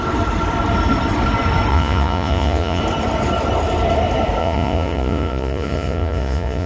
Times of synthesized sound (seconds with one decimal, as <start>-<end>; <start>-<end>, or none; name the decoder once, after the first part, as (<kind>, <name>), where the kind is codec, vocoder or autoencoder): 1.7-2.8 (vocoder, Vocos); 4.4-6.7